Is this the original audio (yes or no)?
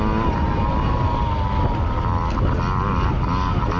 yes